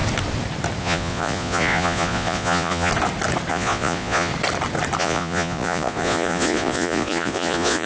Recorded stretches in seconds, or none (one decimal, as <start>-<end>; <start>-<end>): 0.0-0.8; 2.9-3.5; 4.3-5.0